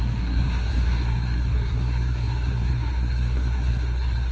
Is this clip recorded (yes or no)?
no